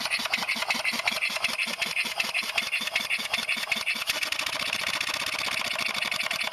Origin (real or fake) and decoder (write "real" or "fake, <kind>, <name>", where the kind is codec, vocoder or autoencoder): real